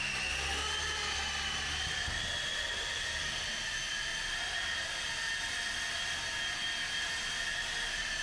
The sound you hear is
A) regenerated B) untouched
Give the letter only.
B